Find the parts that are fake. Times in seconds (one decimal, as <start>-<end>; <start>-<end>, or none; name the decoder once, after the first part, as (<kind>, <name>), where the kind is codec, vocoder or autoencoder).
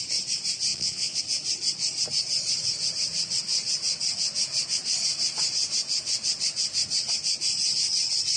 0.7-1.2 (vocoder, Vocos)